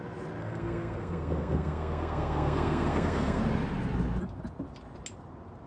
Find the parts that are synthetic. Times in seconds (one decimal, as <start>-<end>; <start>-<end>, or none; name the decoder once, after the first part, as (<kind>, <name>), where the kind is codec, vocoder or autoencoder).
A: 0.4-3.4 (codec, SNAC)